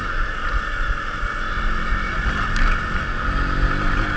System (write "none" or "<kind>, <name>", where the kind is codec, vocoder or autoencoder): none